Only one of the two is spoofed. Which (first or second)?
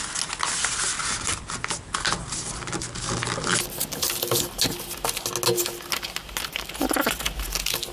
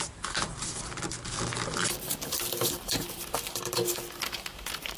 second